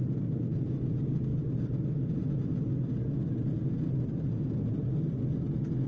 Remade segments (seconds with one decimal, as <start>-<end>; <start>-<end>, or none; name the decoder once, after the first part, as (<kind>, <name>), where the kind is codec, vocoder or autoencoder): 0.0-1.3 (vocoder, BigVGAN v2); 4.1-4.8